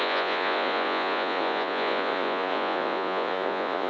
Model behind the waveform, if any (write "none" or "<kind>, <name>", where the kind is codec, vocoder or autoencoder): vocoder, Vocos